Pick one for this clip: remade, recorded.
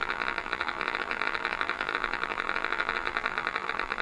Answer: remade